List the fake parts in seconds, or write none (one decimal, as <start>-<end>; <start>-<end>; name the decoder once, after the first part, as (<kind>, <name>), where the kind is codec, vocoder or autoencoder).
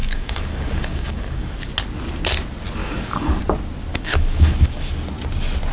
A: 0.0-1.6 (codec, DAC); 2.8-3.4; 3.9-4.9